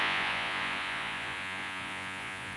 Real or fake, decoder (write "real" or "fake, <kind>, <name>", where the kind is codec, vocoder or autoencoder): fake, vocoder, Vocos